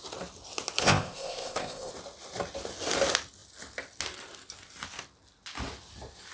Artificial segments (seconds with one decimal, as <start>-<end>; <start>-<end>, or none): 0.8-1.9